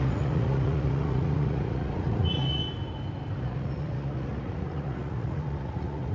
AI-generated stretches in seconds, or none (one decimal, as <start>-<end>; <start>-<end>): 0.0-2.6; 3.4-6.1